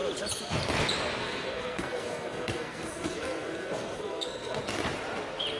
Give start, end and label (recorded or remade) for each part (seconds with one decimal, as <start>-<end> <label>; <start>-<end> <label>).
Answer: 0.0-1.2 recorded; 1.2-4.6 remade; 4.6-5.6 recorded